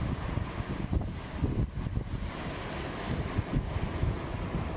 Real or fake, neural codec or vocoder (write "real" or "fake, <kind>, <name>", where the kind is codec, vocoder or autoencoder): real